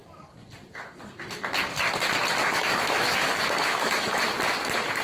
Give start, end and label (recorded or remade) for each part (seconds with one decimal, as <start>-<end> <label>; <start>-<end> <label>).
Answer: 0.0-2.4 recorded; 2.4-4.2 remade; 4.2-5.0 recorded